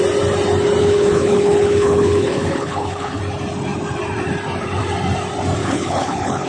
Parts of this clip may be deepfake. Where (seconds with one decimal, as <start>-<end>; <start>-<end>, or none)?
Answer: 0.8-3.2; 5.6-6.5